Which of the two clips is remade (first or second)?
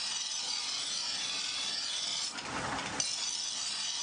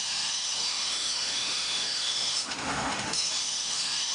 second